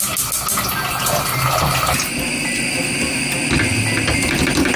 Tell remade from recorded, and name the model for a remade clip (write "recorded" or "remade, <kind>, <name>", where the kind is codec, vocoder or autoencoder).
recorded